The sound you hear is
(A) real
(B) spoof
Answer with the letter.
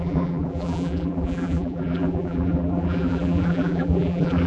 B